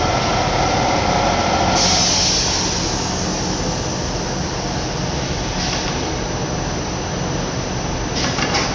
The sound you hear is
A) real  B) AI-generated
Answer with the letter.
A